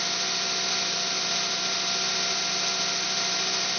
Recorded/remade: recorded